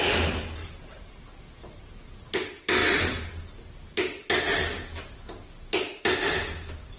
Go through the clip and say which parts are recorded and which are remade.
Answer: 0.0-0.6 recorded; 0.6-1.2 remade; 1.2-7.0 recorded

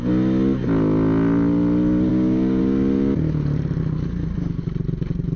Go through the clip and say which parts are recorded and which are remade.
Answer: 0.0-2.1 recorded; 2.1-2.6 remade; 2.6-5.4 recorded

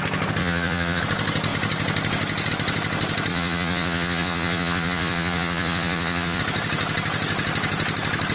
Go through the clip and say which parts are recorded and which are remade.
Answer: 0.0-0.4 recorded; 0.4-1.0 remade; 1.0-3.3 recorded; 3.3-6.4 remade; 6.4-8.3 recorded

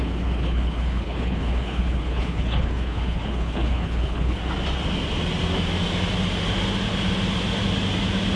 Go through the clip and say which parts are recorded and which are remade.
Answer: 0.0-4.4 remade; 4.4-8.4 recorded